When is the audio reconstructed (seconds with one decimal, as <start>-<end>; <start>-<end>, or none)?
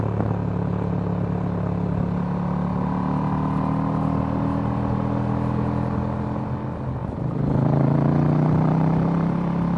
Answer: 7.0-9.8